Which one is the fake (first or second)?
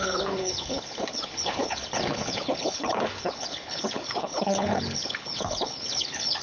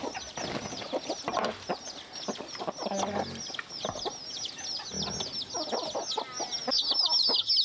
first